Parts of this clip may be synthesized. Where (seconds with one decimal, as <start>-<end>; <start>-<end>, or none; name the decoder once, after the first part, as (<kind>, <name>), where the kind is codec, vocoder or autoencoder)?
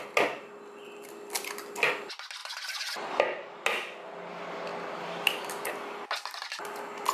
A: none